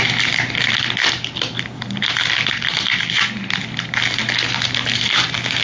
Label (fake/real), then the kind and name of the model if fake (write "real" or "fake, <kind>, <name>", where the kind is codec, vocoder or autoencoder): real